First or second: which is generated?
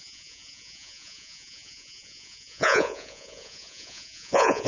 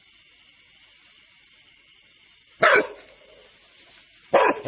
first